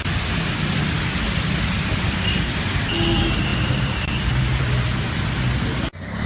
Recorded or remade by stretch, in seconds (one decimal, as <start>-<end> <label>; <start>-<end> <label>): 0.0-1.9 recorded; 1.9-2.4 remade; 2.4-3.5 recorded; 3.5-5.1 remade; 5.1-6.3 recorded